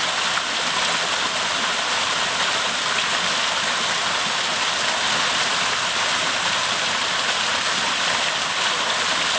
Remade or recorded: recorded